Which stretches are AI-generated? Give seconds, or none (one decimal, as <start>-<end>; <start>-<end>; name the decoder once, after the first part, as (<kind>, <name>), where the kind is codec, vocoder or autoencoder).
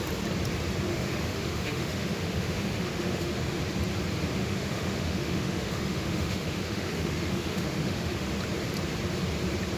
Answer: 0.9-3.3 (autoencoder, DAC-VAE); 4.4-8.3